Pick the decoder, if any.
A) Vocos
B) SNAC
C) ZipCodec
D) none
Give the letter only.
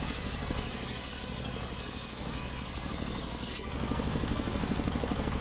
B